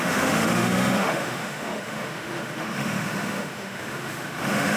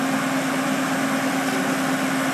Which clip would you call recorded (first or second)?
second